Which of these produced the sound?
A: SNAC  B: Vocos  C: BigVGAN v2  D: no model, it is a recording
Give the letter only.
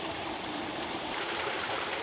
C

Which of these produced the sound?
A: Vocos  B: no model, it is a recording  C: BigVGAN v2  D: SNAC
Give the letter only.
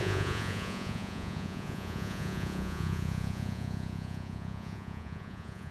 A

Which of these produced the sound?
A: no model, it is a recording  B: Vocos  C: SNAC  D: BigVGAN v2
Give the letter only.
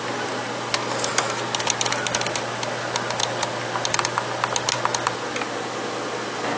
A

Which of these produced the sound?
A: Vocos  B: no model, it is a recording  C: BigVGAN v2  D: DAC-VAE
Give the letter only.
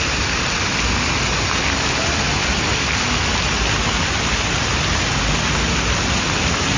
B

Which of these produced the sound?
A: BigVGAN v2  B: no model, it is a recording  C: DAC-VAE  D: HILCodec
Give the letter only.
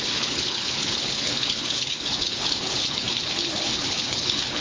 D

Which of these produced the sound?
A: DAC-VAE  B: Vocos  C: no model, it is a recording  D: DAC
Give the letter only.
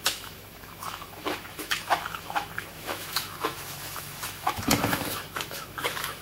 A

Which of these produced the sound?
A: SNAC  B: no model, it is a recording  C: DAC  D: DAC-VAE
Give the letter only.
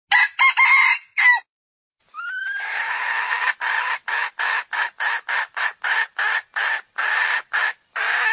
B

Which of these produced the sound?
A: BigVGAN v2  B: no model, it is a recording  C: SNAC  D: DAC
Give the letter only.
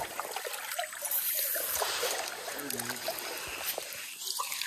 B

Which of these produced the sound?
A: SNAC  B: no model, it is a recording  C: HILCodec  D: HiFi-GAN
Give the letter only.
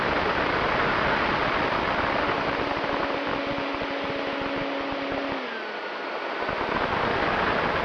B